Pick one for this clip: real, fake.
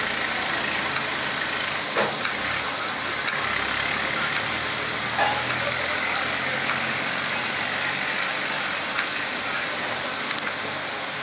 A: real